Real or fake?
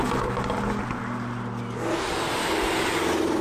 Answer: real